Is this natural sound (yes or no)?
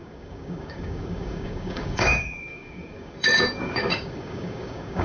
no